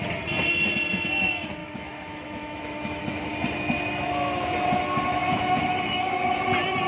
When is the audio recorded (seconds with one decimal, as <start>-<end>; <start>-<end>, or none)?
0.0-1.6; 3.0-5.2; 6.2-6.9